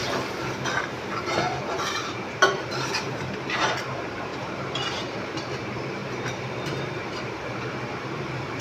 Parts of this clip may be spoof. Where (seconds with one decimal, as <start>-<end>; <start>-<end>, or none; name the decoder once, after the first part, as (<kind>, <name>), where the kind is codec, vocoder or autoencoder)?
0.9-8.6 (vocoder, BigVGAN v2)

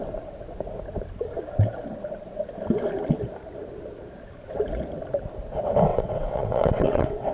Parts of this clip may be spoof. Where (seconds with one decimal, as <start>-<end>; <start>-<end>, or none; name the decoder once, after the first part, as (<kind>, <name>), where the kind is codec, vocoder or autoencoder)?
5.9-7.3 (vocoder, WaveNeXt)

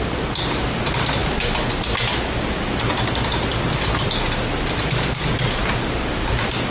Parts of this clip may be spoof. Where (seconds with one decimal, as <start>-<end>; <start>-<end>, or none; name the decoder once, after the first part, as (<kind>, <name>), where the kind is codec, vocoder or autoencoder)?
none

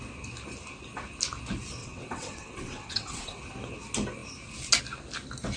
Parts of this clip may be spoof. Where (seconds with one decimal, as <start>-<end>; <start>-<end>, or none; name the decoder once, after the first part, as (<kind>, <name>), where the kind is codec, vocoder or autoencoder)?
1.8-3.4 (vocoder, WaveNeXt)

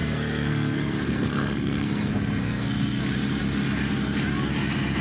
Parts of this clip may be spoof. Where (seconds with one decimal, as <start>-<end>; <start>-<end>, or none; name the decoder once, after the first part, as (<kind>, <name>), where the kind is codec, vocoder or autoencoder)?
0.0-3.0 (codec, SNAC)